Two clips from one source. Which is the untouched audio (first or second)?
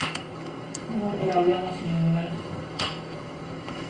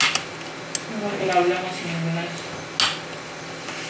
second